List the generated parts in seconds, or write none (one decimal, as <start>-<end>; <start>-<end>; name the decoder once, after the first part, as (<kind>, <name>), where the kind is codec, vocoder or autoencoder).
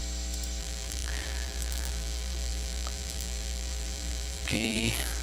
0.6-5.2 (vocoder, BigVGAN v2)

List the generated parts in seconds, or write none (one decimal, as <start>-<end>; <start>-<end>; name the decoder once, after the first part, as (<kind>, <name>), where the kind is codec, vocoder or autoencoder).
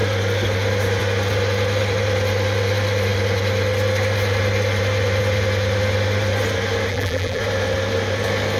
6.9-7.4 (vocoder, BigVGAN v2)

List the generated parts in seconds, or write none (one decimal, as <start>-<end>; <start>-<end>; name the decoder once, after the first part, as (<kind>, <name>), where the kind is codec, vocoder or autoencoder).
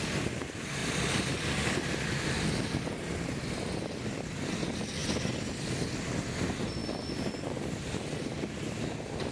0.8-1.9 (vocoder, BigVGAN v2); 5.0-5.7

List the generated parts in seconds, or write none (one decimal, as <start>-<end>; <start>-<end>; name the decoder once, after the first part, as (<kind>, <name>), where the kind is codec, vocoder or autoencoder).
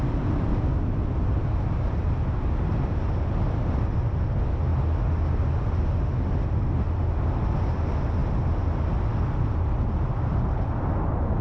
none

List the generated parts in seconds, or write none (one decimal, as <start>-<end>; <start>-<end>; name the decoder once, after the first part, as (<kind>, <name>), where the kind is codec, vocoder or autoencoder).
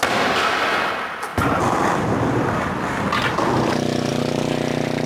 1.3-1.9 (vocoder, BigVGAN v2); 4.1-5.1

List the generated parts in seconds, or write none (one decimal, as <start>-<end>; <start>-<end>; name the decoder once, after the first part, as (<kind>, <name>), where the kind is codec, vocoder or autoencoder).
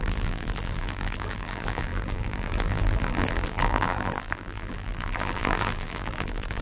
0.0-6.6 (vocoder, BigVGAN v2)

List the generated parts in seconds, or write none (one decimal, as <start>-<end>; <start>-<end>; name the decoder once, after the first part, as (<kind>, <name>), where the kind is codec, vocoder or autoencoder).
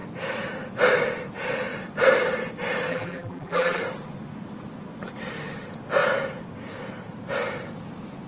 2.9-3.8 (vocoder, BigVGAN v2)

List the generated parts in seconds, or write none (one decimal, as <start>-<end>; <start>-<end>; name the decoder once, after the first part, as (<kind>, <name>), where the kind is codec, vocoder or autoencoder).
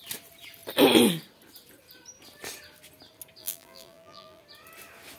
3.4-4.4 (vocoder, BigVGAN v2)